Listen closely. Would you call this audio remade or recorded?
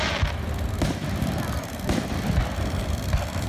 recorded